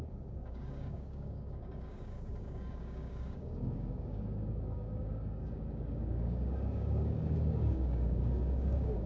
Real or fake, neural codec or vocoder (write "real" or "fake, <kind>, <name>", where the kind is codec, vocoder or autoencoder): fake, codec, DAC